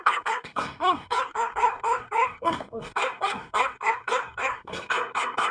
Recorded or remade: remade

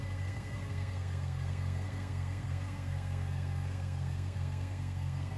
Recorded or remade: remade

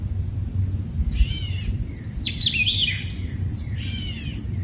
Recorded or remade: recorded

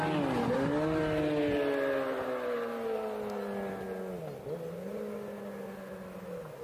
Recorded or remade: recorded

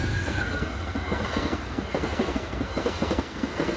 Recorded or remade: remade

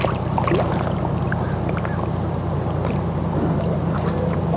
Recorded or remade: recorded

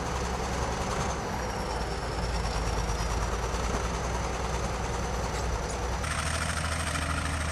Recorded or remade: recorded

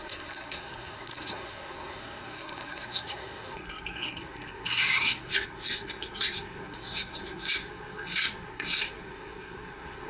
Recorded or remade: remade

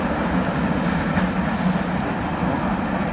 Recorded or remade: recorded